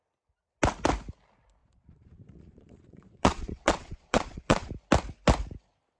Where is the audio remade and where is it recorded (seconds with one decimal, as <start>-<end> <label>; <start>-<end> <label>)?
0.0-1.6 recorded; 1.6-4.7 remade; 4.7-6.0 recorded